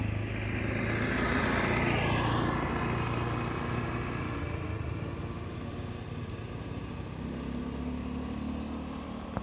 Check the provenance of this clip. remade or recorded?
recorded